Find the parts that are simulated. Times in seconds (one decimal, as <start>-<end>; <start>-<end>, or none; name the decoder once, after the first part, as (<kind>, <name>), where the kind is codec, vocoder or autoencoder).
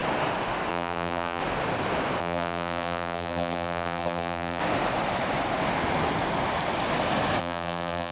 0.7-1.4 (vocoder, BigVGAN v2); 2.2-4.6; 7.4-8.1